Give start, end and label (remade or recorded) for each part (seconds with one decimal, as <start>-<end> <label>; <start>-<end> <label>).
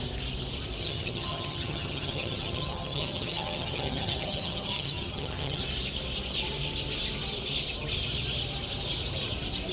0.0-0.8 recorded; 0.8-5.6 remade; 5.6-9.7 recorded